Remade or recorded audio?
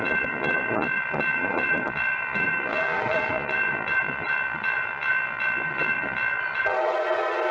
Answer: remade